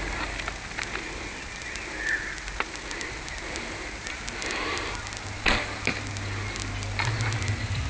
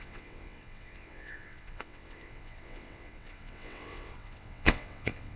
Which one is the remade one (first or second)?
second